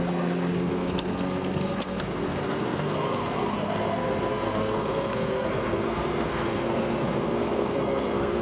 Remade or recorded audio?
remade